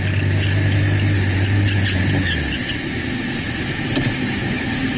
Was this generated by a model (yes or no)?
no